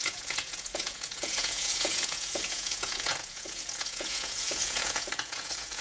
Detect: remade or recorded remade